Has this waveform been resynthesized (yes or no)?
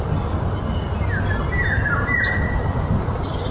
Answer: no